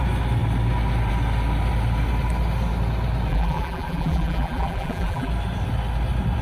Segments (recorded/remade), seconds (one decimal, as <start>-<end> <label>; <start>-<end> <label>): 0.0-3.3 recorded; 3.3-5.3 remade; 5.3-6.4 recorded